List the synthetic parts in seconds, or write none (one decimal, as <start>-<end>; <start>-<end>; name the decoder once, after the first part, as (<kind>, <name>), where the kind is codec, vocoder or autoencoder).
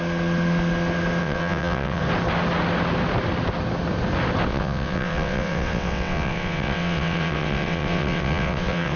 1.2-2.0 (vocoder, WaveNeXt); 4.5-9.0